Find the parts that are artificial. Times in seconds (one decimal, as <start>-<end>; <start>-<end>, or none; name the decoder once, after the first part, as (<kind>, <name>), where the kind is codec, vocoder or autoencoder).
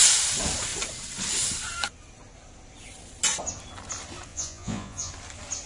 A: 4.3-5.1 (vocoder, Vocos)